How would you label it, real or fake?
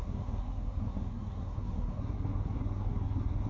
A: fake